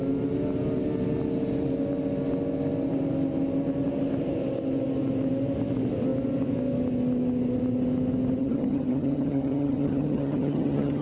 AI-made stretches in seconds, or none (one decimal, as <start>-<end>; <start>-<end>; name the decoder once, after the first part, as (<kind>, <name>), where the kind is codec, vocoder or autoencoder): 8.4-11.0 (vocoder, HiFi-GAN)